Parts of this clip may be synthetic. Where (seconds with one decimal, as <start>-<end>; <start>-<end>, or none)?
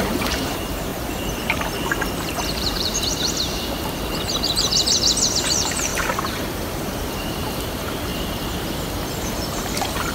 0.0-0.9; 2.5-2.9; 5.5-8.1; 9.2-10.1